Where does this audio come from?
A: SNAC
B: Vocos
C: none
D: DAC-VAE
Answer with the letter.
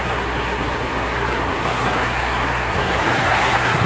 A